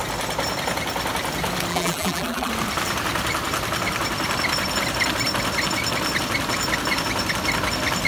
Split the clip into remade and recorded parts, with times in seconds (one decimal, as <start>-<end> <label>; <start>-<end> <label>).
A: 0.0-1.7 recorded; 1.7-2.5 remade; 2.5-8.1 recorded